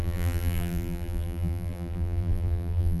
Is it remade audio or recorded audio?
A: remade